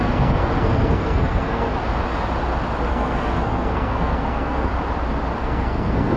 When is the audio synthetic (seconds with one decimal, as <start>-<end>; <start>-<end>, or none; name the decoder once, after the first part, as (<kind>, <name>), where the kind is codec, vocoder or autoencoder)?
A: 0.0-1.7 (codec, SNAC); 2.9-4.7; 5.4-6.2